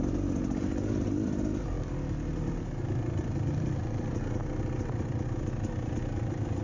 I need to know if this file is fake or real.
real